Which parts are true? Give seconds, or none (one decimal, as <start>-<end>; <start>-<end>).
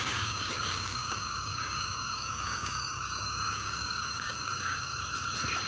4.9-5.7